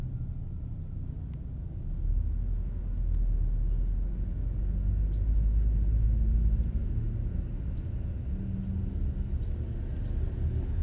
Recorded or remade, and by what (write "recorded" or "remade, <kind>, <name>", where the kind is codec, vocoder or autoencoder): recorded